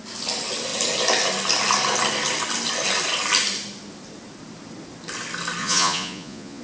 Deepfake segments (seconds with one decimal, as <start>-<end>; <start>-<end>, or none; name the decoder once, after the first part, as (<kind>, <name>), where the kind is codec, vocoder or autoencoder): 5.6-6.6 (vocoder, Vocos)